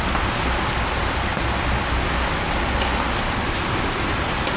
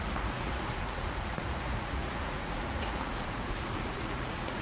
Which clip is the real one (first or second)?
first